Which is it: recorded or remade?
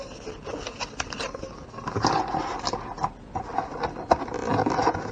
recorded